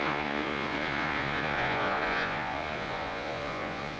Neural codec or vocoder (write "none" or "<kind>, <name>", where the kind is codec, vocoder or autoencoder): vocoder, Vocos